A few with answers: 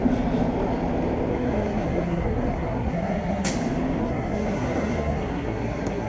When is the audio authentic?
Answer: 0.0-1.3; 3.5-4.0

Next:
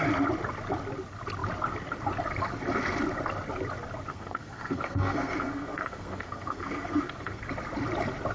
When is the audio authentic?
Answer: 0.0-4.1; 7.4-8.3

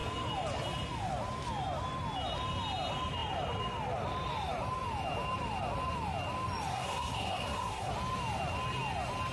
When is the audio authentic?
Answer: 0.0-6.7; 7.9-9.3

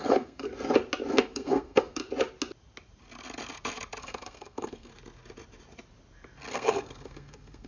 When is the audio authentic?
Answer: 0.5-1.1; 2.0-4.0; 4.9-6.5

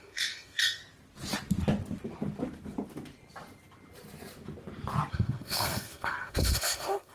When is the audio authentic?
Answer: 0.8-5.1

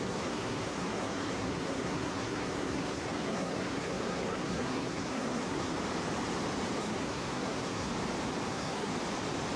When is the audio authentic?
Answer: 5.7-6.8; 7.9-8.5; 8.9-9.6

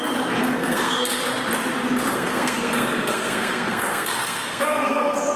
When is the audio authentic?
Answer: 0.0-0.4; 1.2-2.1